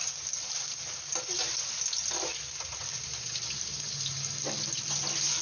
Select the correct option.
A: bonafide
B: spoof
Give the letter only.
A